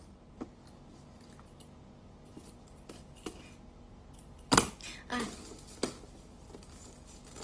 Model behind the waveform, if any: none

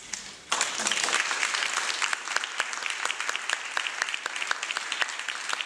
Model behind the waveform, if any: none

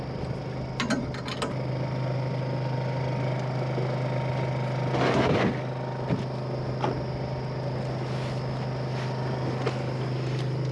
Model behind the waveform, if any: none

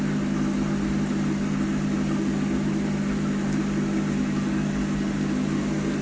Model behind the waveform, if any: none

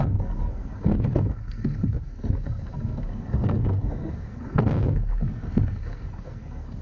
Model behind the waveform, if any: codec, SNAC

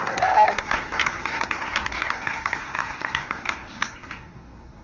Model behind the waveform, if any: codec, SNAC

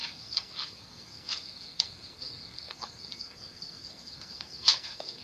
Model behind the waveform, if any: codec, SNAC